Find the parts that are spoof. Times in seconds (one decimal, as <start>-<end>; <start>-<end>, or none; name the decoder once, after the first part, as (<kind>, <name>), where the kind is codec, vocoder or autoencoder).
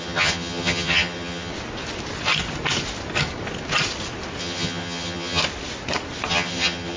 0.0-1.5 (vocoder, HiFi-GAN); 4.4-5.4; 6.3-7.0